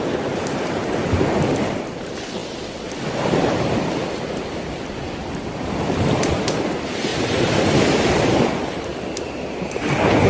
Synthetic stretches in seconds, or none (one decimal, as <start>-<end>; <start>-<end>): 7.1-8.1; 8.9-9.9